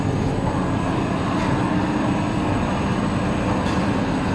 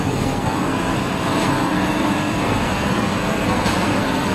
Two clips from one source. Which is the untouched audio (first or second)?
first